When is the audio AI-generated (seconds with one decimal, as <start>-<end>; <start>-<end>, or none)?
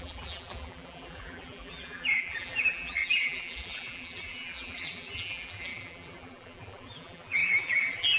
0.0-8.2